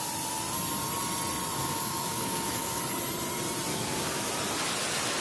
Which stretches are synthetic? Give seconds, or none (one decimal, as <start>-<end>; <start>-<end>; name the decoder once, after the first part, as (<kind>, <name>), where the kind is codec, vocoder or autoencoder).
1.6-2.8 (codec, DAC); 3.7-4.3